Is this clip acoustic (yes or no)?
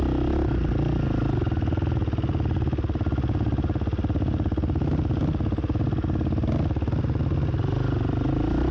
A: yes